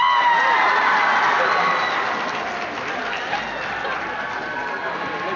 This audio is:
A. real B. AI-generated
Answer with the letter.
A